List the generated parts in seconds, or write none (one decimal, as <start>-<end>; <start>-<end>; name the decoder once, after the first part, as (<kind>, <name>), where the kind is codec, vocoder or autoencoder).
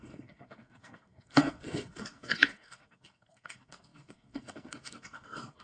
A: 0.0-5.6 (codec, SNAC)